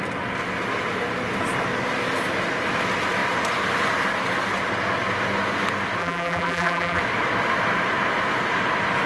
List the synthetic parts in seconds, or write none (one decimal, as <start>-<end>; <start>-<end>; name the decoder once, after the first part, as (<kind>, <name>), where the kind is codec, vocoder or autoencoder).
6.0-7.0 (vocoder, BigVGAN v2)